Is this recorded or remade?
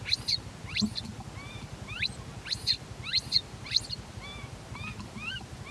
recorded